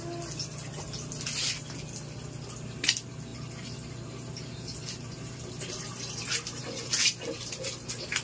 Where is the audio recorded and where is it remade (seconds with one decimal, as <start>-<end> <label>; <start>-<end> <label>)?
0.0-8.2 recorded